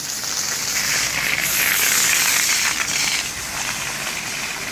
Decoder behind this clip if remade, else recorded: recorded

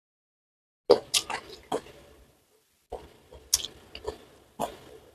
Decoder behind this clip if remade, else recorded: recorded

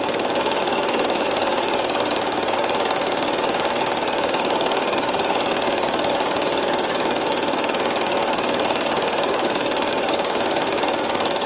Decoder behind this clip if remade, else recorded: remade, codec, DAC